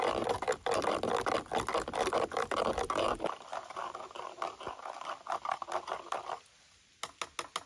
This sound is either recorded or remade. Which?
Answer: recorded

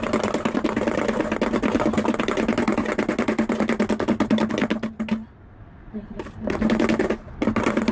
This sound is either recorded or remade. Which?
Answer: recorded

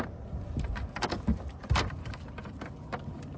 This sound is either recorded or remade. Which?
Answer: remade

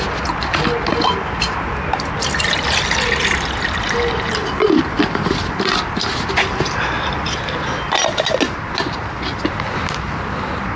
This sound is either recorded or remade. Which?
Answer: recorded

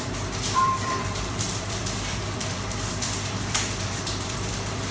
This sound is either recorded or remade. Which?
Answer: remade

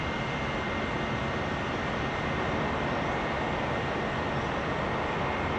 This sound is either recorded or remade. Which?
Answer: recorded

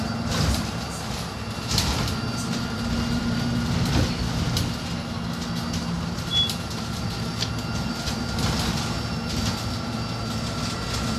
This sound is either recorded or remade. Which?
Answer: recorded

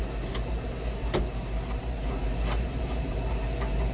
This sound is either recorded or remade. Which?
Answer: remade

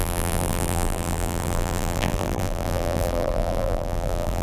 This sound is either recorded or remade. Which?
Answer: remade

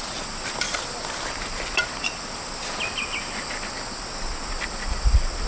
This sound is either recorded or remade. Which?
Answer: recorded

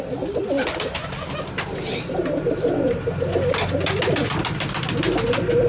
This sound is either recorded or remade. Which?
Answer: recorded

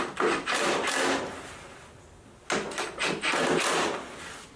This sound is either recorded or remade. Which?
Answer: recorded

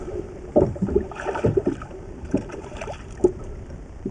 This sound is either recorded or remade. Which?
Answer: remade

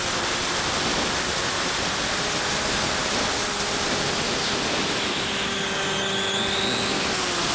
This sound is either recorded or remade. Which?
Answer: recorded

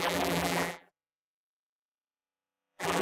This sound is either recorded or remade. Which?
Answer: remade